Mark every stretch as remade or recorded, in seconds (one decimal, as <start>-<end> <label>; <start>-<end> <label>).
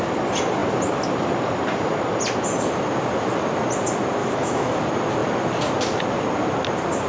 0.0-4.2 recorded; 4.2-4.8 remade; 4.8-7.1 recorded